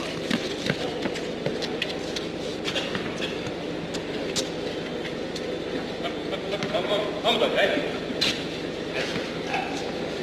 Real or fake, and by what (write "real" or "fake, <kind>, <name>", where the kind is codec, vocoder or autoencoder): real